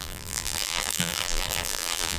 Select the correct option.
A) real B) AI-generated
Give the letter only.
B